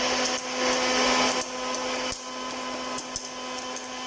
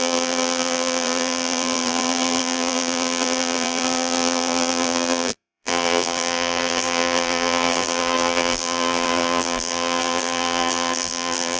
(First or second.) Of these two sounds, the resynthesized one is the second